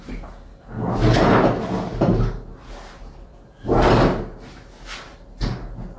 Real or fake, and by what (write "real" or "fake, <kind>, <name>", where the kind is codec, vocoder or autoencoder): real